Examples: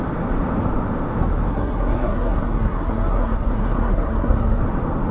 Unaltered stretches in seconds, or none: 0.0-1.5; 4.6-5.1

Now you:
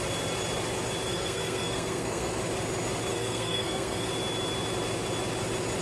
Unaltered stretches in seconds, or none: 0.0-1.1; 2.4-3.1; 4.1-5.8

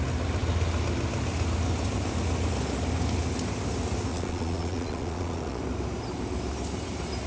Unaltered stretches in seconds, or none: 0.0-4.1; 5.6-7.3

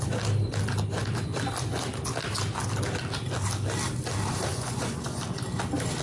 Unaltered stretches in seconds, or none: 0.0-4.5; 5.2-6.0

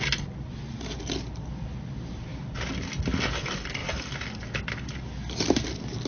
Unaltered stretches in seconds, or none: 0.0-6.1

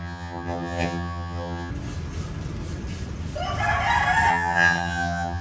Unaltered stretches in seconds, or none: 1.7-4.3

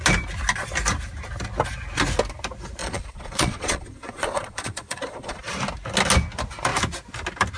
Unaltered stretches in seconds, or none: 0.0-2.8; 5.4-7.6